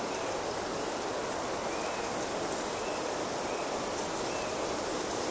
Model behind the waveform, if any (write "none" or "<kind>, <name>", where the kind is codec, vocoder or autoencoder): none